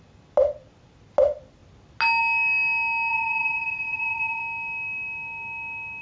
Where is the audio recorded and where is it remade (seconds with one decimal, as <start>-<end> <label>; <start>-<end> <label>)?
0.0-3.1 recorded; 3.1-4.4 remade; 4.4-6.0 recorded

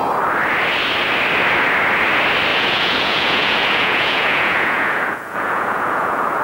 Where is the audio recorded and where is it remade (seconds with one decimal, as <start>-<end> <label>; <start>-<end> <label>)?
0.0-2.5 recorded; 2.5-6.4 remade

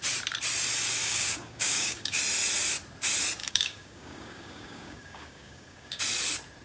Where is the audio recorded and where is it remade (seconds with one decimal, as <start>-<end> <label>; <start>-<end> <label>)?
0.0-1.0 recorded; 1.0-2.2 remade; 2.2-3.4 recorded; 3.4-6.0 remade; 6.0-6.6 recorded

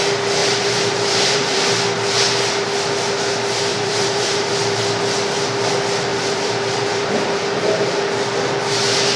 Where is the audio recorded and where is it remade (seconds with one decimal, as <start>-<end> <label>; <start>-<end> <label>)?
0.0-0.4 recorded; 0.4-1.6 remade; 1.6-3.7 recorded; 3.7-4.5 remade; 4.5-6.1 recorded; 6.1-7.1 remade; 7.1-9.2 recorded

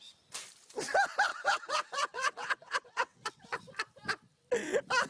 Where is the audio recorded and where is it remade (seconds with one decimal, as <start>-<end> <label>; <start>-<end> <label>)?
0.0-1.3 recorded; 1.3-3.6 remade; 3.6-5.1 recorded

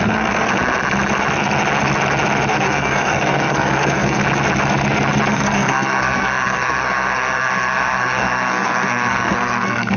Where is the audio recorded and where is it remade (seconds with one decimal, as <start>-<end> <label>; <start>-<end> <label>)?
0.0-0.5 remade; 0.5-2.5 recorded; 2.5-4.2 remade; 4.2-5.3 recorded; 5.3-10.0 remade

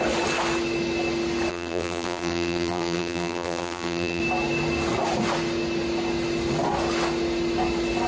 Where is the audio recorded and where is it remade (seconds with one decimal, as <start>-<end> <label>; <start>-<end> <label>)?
0.0-1.5 recorded; 1.5-4.2 remade; 4.2-8.1 recorded

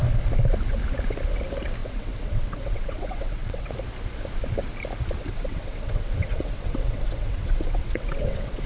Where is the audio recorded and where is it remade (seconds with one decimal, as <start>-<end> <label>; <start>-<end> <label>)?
0.0-1.8 recorded; 1.8-3.7 remade; 3.7-5.2 recorded; 5.2-8.7 remade